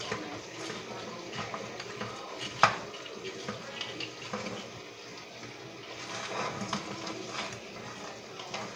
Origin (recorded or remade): recorded